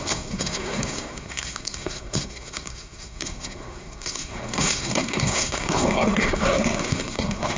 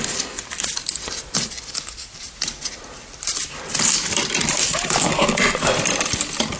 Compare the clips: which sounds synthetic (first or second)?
first